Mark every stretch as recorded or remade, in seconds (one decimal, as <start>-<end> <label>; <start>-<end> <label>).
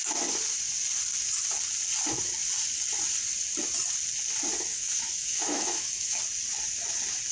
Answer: 0.0-4.7 recorded; 4.7-6.2 remade; 6.2-7.3 recorded